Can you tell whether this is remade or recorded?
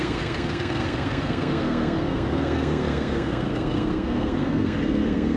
remade